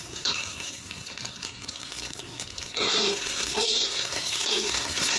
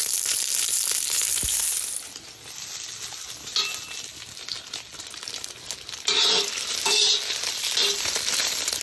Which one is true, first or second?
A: second